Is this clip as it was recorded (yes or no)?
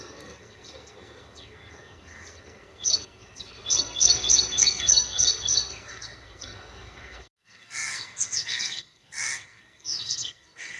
no